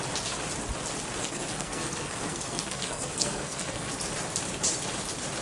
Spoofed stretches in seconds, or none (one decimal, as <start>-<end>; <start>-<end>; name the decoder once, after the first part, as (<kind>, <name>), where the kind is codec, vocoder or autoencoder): 1.2-3.9 (codec, SNAC)